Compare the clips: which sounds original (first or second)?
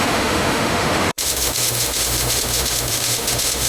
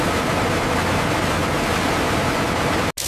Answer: second